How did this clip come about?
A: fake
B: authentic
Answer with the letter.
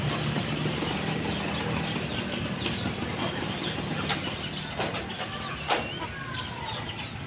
B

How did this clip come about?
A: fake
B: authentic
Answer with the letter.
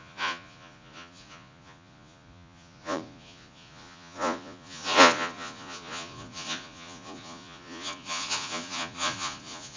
A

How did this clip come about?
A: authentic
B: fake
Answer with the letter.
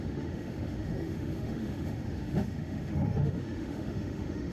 B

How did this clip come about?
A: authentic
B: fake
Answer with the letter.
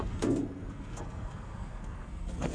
B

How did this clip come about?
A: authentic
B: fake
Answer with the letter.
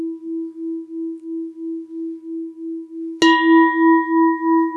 A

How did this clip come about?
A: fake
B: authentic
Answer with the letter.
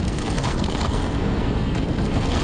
A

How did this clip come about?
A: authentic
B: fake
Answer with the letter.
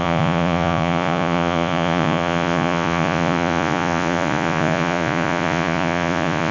B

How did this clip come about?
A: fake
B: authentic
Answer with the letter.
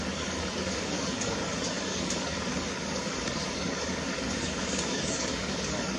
A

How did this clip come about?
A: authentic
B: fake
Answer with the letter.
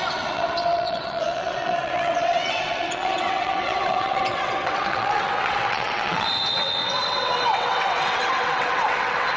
B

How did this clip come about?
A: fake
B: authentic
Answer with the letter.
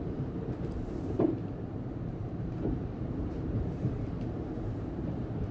A